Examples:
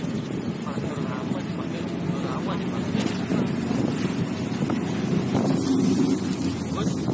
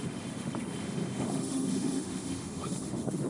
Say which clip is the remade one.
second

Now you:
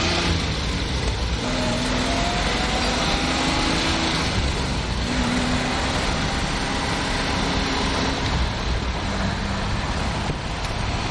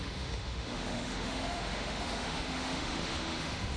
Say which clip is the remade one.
second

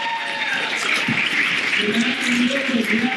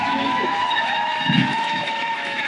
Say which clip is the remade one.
second